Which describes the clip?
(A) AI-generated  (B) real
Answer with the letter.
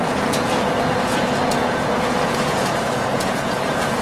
A